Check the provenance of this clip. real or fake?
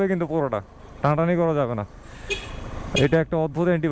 fake